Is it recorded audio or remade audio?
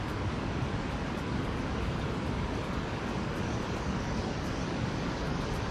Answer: remade